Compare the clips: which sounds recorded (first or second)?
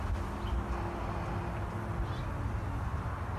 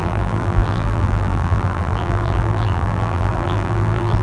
first